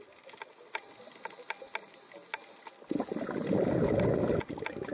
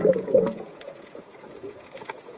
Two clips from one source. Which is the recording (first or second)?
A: first